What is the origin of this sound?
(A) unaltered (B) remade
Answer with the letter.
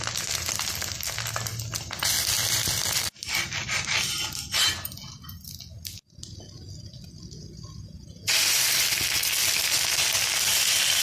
A